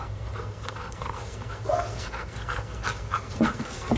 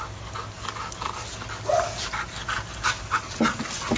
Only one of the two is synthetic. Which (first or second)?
first